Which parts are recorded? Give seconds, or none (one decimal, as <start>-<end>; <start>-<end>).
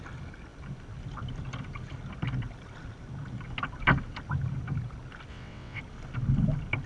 0.0-5.3; 5.8-6.9